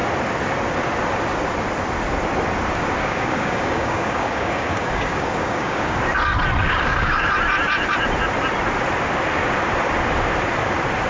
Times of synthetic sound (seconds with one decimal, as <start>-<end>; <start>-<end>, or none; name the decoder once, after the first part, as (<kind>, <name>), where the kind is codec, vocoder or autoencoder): 3.0-6.0 (codec, DAC); 6.6-7.3